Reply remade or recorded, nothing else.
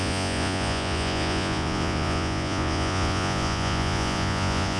remade